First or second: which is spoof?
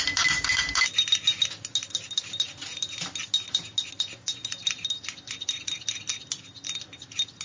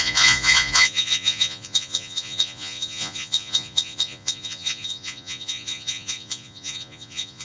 second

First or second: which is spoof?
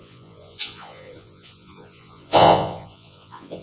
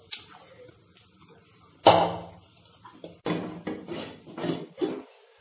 first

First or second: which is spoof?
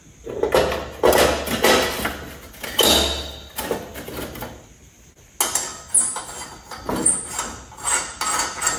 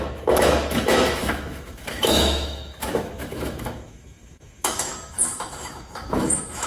second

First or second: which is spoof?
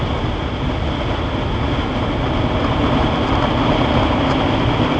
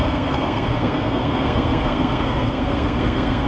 second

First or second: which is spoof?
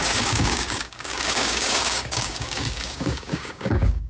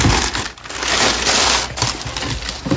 first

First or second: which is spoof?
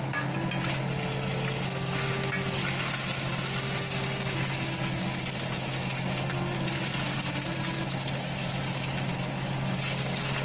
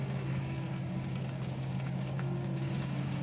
second